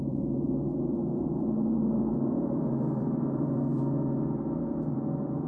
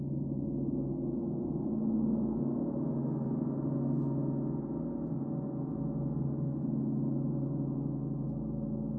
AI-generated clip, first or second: first